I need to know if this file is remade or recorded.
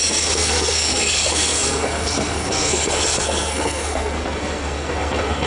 remade